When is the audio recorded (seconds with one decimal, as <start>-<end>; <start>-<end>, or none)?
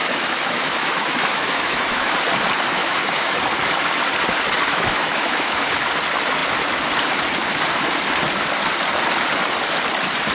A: 2.1-2.8; 3.4-4.7; 5.6-10.3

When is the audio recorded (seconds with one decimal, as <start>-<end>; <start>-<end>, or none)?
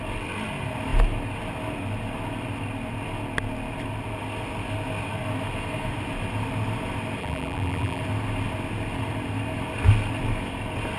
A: 0.0-7.2; 8.0-11.0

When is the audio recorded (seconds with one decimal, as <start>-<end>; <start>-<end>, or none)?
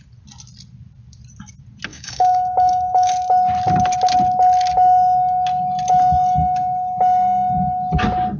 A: 0.0-1.9; 3.1-8.4